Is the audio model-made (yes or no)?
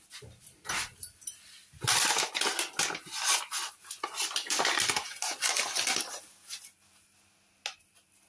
no